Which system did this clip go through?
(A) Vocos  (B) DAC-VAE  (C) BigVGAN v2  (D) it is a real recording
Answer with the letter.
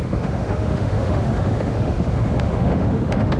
B